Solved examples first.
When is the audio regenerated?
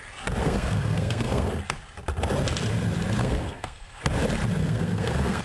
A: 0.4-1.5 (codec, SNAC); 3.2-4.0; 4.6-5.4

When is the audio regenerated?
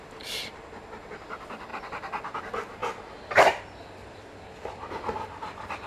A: 2.8-3.6 (vocoder, BigVGAN v2)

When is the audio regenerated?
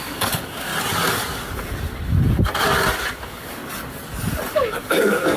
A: 0.0-0.7 (codec, DAC); 3.1-3.6; 4.5-5.4